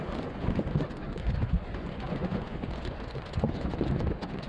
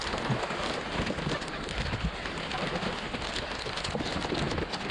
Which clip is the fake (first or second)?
first